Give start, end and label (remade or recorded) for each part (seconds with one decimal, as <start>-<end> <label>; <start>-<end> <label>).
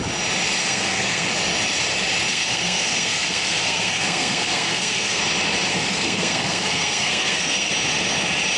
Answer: 0.0-0.6 recorded; 0.6-1.3 remade; 1.3-2.3 recorded; 2.3-5.2 remade; 5.2-5.7 recorded; 5.7-7.7 remade; 7.7-8.6 recorded